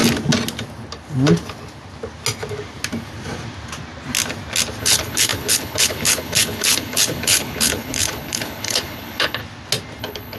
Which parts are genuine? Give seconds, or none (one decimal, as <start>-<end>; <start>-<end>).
0.0-4.8; 9.4-10.0